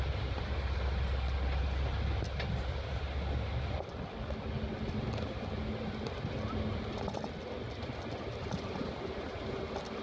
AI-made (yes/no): no